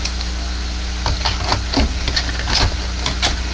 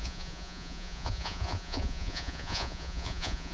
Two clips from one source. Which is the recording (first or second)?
first